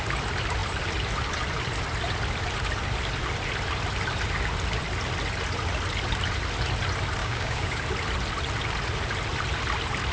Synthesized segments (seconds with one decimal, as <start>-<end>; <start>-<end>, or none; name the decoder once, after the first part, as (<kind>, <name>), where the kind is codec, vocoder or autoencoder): 7.2-7.8 (codec, DAC)